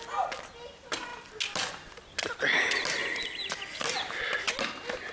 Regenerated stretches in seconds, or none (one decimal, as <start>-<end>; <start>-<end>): none